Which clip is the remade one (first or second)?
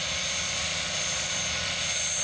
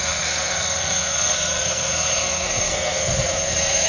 second